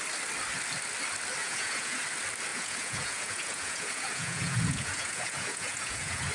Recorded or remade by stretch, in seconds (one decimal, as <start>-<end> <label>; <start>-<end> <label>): 0.0-1.4 recorded; 1.4-2.0 remade; 2.0-2.5 recorded; 2.5-6.3 remade